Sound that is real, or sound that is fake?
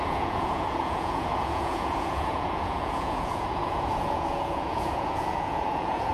fake